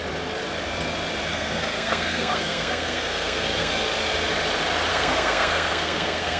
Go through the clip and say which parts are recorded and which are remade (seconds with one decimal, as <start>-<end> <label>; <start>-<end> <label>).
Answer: 0.0-1.3 recorded; 1.3-3.7 remade; 3.7-4.9 recorded; 4.9-6.4 remade